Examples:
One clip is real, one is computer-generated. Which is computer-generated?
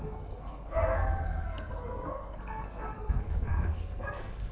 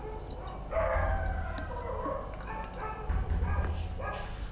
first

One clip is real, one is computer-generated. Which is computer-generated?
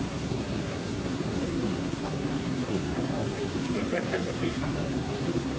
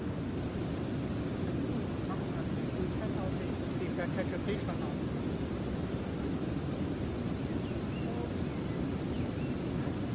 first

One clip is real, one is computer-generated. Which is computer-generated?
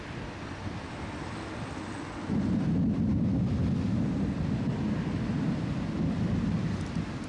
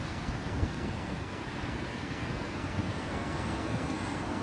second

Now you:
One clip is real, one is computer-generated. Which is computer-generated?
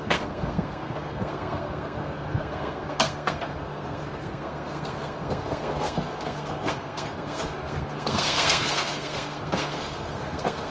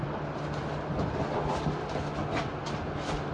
first